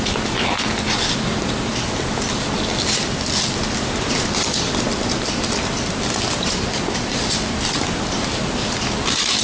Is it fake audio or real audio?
real